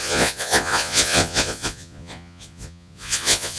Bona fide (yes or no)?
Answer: no